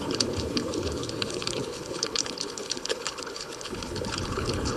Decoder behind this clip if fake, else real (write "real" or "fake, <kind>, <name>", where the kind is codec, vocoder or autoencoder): fake, codec, HILCodec